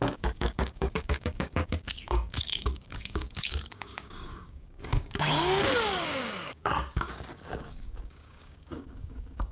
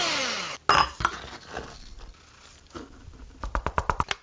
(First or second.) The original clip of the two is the second